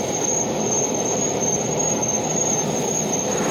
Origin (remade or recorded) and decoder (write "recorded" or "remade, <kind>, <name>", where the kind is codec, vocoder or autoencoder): remade, vocoder, BigVGAN v2